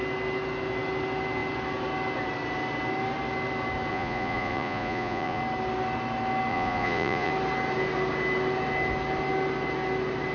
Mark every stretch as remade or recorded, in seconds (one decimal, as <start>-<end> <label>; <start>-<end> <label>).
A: 0.0-3.9 recorded; 3.9-5.4 remade; 5.4-6.5 recorded; 6.5-7.3 remade; 7.3-10.3 recorded